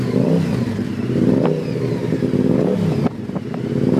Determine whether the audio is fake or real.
real